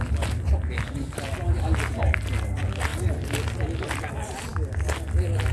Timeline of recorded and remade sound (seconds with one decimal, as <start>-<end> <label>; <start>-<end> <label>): 0.0-5.5 recorded